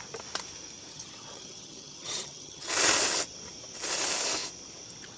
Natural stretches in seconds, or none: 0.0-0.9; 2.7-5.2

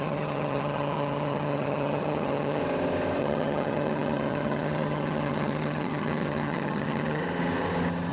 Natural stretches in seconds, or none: 2.6-3.2; 7.2-8.1

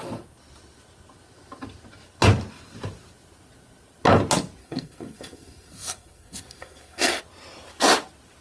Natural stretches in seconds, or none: 0.0-4.6; 7.2-8.4

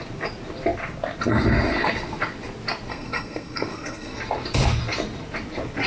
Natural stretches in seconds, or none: 0.0-2.9; 4.2-5.9

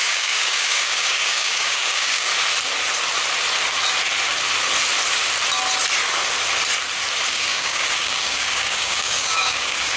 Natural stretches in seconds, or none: 2.3-7.3